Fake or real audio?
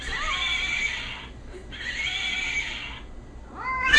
real